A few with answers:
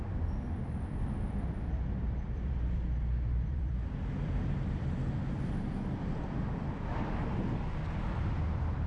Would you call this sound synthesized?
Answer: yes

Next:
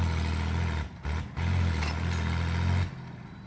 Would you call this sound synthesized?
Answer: no